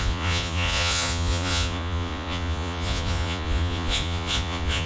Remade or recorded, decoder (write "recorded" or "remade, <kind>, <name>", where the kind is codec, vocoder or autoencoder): remade, vocoder, Vocos